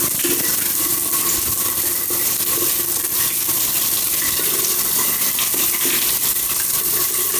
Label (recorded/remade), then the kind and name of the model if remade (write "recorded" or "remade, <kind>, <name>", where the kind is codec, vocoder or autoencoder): recorded